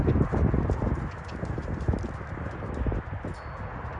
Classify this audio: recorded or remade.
recorded